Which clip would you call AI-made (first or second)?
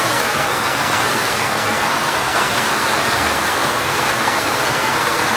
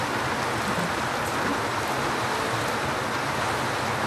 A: first